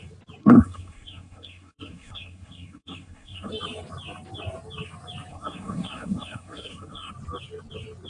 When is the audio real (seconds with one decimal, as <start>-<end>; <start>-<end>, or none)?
0.0-0.4; 3.5-5.3; 7.1-8.1